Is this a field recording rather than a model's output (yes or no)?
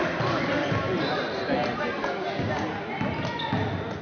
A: yes